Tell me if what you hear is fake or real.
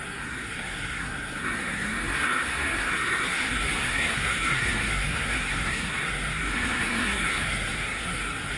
fake